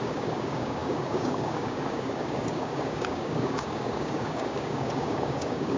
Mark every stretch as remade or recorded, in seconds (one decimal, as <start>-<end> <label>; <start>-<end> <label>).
0.0-5.8 remade